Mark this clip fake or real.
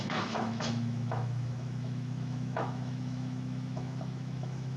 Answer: fake